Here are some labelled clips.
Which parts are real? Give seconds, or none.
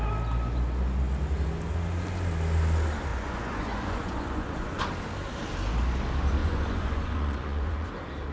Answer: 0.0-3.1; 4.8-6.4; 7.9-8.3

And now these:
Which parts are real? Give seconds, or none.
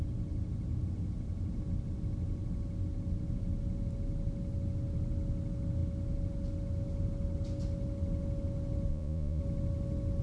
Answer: 0.0-8.9; 9.4-10.2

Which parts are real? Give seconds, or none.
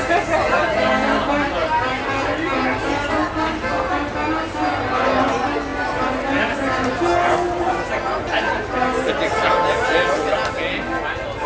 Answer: 0.0-11.5